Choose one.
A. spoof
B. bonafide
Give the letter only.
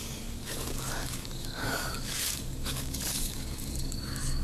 A